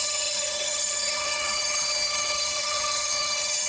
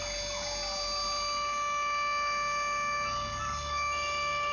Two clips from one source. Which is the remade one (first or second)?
first